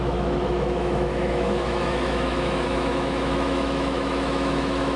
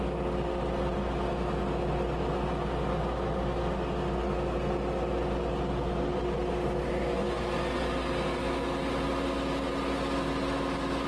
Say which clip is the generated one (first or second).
first